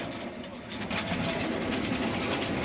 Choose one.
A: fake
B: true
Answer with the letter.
B